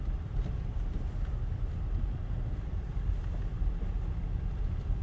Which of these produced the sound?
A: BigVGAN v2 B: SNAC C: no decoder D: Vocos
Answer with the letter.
C